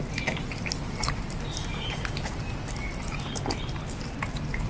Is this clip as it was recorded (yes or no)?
yes